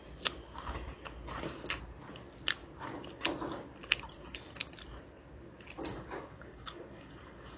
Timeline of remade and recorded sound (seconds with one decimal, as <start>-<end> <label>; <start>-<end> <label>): 0.0-5.9 recorded; 5.9-7.6 remade